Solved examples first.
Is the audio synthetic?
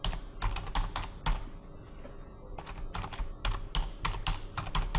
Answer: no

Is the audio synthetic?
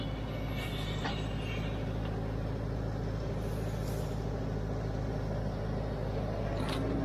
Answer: no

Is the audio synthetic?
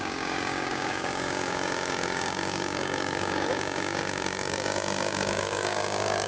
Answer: yes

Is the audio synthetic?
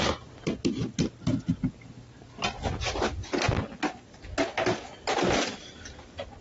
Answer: no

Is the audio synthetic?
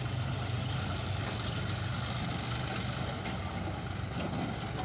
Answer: no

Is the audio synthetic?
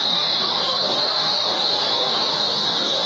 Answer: yes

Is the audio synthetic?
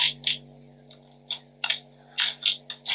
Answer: no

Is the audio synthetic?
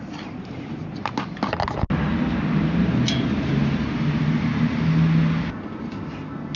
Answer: no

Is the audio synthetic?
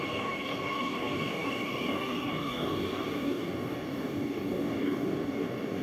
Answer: yes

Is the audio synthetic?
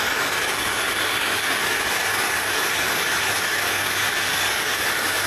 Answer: yes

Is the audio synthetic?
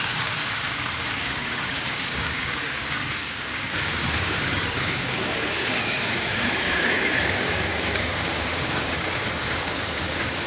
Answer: yes